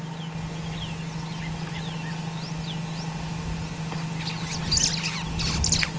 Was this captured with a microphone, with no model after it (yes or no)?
yes